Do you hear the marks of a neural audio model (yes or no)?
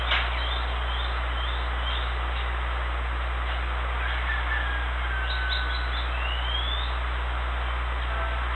no